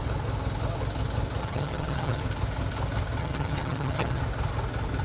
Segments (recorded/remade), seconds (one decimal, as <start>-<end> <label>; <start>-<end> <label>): 0.0-1.4 recorded; 1.4-2.2 remade; 2.2-3.2 recorded; 3.2-4.2 remade; 4.2-5.0 recorded

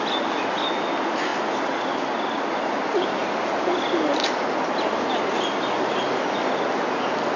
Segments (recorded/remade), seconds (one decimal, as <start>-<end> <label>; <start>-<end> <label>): 0.0-7.4 recorded

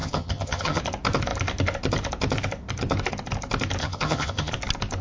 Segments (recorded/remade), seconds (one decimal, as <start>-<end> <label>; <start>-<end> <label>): 0.0-0.8 remade; 0.8-3.8 recorded; 3.8-4.5 remade; 4.5-5.0 recorded

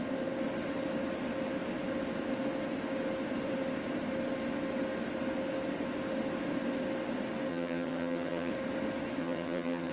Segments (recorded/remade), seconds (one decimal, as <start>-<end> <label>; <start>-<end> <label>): 0.0-7.5 recorded; 7.5-8.5 remade; 8.5-9.2 recorded; 9.2-9.9 remade

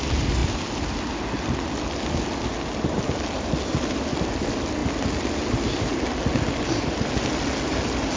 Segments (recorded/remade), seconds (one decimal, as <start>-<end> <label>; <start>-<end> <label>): 0.0-8.2 recorded